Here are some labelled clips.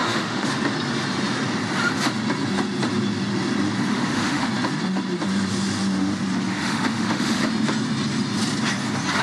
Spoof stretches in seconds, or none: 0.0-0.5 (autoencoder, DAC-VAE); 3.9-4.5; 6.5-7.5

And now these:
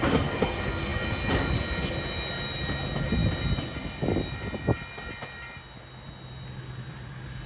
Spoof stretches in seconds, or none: none

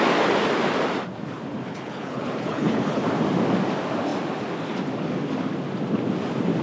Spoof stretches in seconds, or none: 1.7-3.0 (codec, HILCodec)

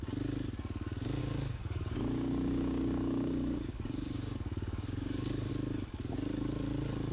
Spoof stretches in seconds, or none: 1.2-5.5 (codec, DAC)